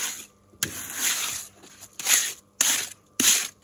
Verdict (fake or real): real